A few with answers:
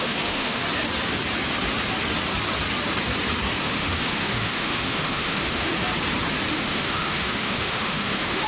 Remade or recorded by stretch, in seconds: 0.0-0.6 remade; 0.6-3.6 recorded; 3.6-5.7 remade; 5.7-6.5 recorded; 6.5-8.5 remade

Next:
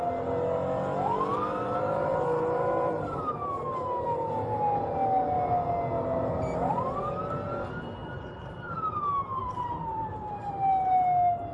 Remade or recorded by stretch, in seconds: 0.0-1.3 recorded; 1.3-3.2 remade; 3.2-8.0 recorded; 8.0-9.0 remade; 9.0-9.4 recorded; 9.4-10.5 remade; 10.5-11.5 recorded

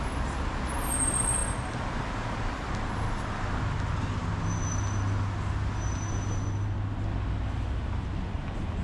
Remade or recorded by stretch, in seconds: 0.0-8.8 recorded

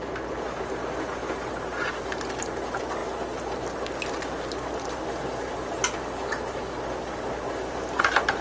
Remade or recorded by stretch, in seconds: 0.0-8.4 recorded

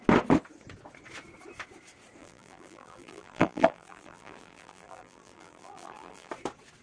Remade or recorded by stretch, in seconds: 0.0-2.2 recorded; 2.2-6.3 remade; 6.3-6.8 recorded

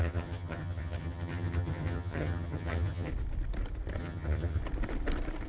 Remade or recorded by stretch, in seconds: 0.0-3.1 remade; 3.1-4.0 recorded; 4.0-4.6 remade; 4.6-5.5 recorded

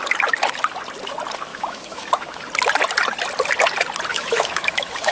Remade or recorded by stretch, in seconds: 0.0-1.5 recorded; 1.5-2.4 remade; 2.4-4.1 recorded; 4.1-5.1 remade